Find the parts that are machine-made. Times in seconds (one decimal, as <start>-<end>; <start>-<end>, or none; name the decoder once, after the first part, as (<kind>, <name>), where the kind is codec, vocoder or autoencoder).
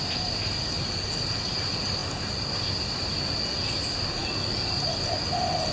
none